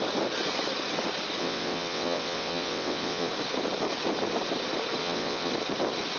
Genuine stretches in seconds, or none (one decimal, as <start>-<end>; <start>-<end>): 0.0-1.4; 3.3-5.0; 5.5-6.2